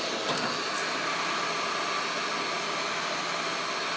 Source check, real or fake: real